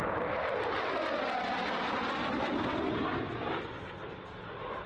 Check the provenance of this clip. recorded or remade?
recorded